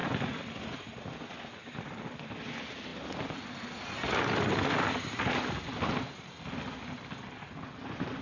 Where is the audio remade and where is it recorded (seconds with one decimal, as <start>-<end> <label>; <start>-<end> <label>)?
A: 0.0-8.2 recorded